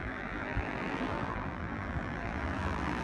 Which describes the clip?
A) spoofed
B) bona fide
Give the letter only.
A